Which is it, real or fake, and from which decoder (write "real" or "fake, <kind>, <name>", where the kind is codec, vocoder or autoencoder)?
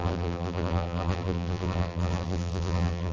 fake, vocoder, BigVGAN v2